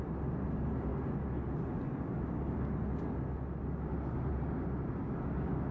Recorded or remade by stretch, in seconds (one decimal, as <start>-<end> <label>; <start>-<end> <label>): 0.0-5.7 recorded